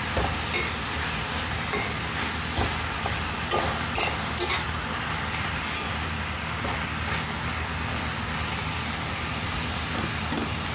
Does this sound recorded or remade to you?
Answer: recorded